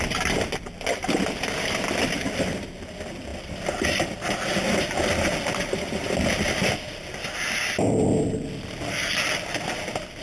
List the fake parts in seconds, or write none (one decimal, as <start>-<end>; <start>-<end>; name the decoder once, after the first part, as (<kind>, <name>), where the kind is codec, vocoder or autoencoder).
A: none